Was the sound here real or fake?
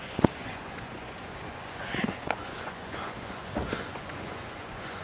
fake